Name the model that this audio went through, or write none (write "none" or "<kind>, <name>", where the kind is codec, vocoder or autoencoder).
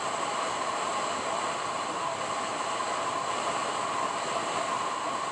none